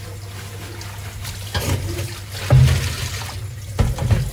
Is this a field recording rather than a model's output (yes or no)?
yes